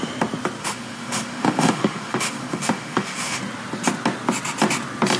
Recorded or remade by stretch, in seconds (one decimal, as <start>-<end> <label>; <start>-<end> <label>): 0.0-0.6 recorded; 0.6-3.4 remade; 3.4-5.2 recorded

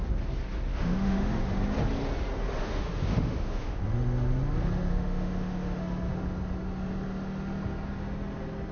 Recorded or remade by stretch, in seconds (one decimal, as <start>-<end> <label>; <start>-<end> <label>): 0.0-0.7 recorded; 0.7-1.4 remade; 1.4-2.6 recorded; 2.6-3.8 remade; 3.8-4.9 recorded; 4.9-5.8 remade; 5.8-8.7 recorded

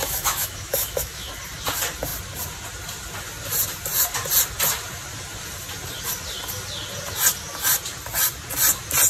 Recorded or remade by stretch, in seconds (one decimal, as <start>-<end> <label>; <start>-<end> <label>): 0.0-1.3 remade; 1.3-9.1 recorded

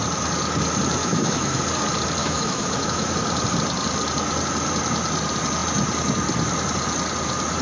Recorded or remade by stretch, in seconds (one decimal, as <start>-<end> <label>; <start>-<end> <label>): 0.0-1.0 recorded; 1.0-1.6 remade; 1.6-2.2 recorded; 2.2-3.1 remade; 3.1-7.6 recorded

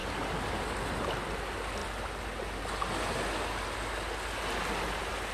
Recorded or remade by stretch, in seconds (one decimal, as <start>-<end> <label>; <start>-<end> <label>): 0.0-5.3 recorded

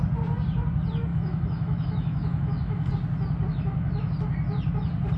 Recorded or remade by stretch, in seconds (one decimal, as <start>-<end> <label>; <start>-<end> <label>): 0.0-1.1 recorded; 1.1-2.9 remade; 2.9-3.5 recorded; 3.5-4.1 remade; 4.1-5.2 recorded

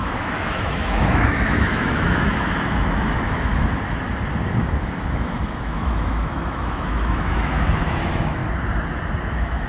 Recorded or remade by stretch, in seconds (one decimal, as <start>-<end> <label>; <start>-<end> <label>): 0.0-3.5 remade; 3.5-4.6 recorded; 4.6-8.4 remade; 8.4-9.2 recorded; 9.2-9.7 remade

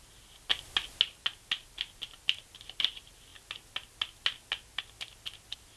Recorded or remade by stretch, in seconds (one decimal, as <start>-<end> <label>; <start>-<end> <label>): 0.0-5.8 recorded